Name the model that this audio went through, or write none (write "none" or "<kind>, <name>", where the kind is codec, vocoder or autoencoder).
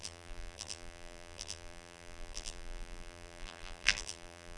vocoder, BigVGAN v2